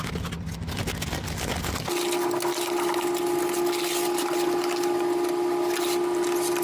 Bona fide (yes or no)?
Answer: yes